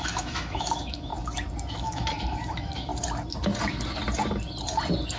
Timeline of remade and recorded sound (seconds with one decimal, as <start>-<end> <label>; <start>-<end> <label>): 0.0-1.1 remade; 1.1-1.7 recorded; 1.7-2.9 remade; 2.9-5.2 recorded